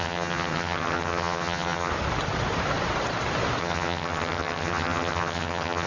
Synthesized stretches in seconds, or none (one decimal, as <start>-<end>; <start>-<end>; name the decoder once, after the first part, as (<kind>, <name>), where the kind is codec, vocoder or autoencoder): 0.0-1.9 (vocoder, HiFi-GAN); 3.6-5.9